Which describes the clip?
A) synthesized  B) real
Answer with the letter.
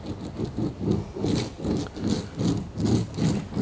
B